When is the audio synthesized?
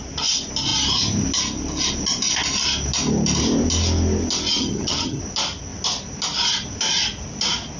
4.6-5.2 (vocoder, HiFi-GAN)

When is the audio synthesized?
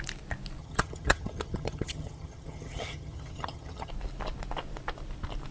0.6-3.9 (vocoder, HiFi-GAN)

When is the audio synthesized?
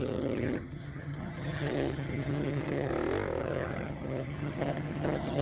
0.0-2.9 (vocoder, HiFi-GAN); 3.4-5.4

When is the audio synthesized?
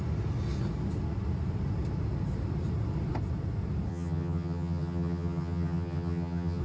3.9-6.6 (vocoder, HiFi-GAN)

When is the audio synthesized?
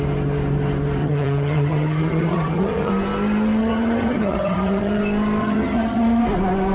1.0-2.9 (vocoder, HiFi-GAN); 3.6-5.0; 5.4-6.2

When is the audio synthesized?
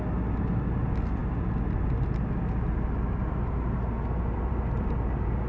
none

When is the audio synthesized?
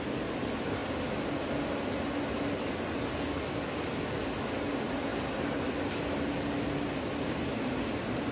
none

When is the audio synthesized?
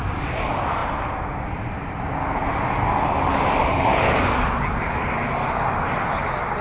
none